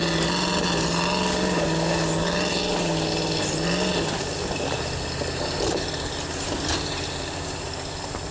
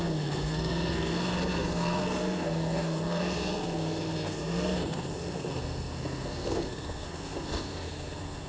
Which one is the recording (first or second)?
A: first